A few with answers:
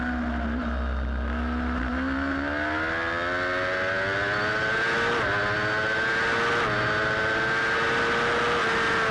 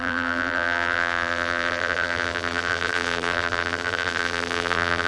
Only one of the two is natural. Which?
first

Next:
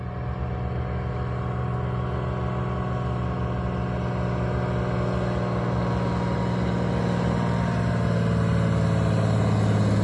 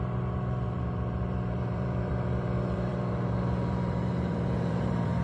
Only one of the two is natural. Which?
first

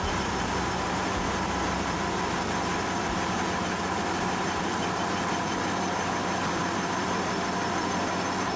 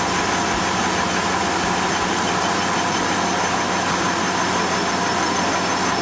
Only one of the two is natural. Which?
second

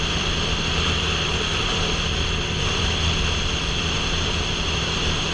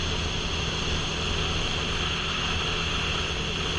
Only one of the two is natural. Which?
second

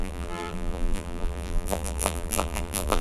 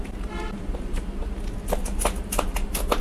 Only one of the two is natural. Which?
second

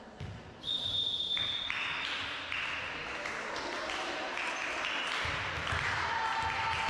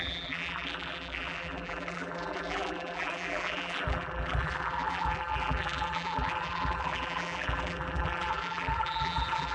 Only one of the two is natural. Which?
first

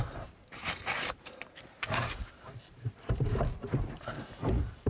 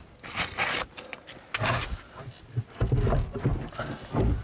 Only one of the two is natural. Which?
second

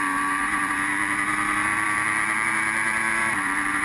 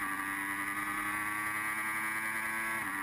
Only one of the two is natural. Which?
second